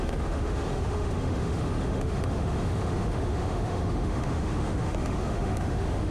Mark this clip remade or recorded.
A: remade